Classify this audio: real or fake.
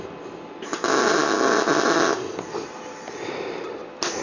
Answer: real